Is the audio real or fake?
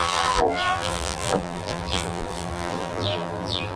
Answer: fake